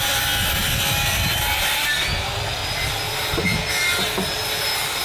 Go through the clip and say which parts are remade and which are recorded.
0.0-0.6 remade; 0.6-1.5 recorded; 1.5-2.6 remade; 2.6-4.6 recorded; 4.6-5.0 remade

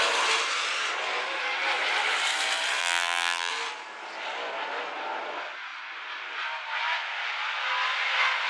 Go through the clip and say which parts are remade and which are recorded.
0.0-2.8 recorded; 2.8-3.5 remade; 3.5-8.5 recorded

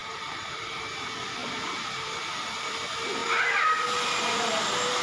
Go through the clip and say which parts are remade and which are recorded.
0.0-0.8 remade; 0.8-1.4 recorded; 1.4-2.2 remade; 2.2-5.0 recorded